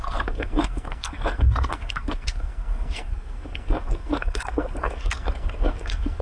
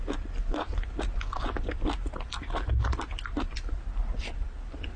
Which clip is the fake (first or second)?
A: first